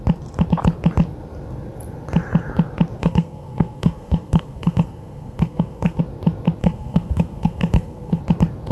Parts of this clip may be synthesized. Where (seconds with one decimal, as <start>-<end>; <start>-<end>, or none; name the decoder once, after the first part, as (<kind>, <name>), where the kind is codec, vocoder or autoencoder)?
3.0-6.0 (codec, SNAC); 6.6-8.2